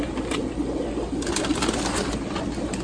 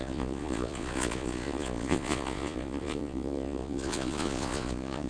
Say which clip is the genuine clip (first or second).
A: first